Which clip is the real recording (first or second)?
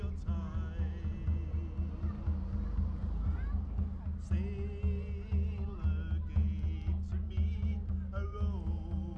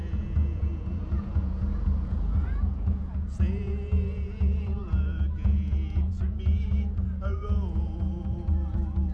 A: first